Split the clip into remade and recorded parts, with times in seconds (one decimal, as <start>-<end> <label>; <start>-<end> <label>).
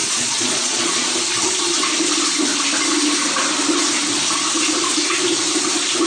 0.0-1.1 remade; 1.1-6.1 recorded